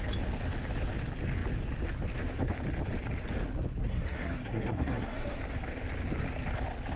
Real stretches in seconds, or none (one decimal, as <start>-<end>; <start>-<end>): 0.0-3.8; 5.4-7.0